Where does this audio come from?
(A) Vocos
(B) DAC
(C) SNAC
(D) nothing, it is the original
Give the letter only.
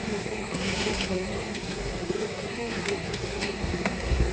C